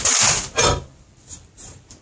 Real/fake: fake